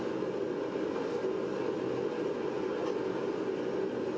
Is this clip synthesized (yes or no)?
no